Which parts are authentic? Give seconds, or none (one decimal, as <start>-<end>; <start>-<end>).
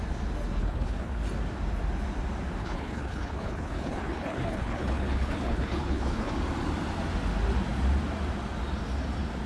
0.0-0.6; 1.2-2.6; 6.3-9.5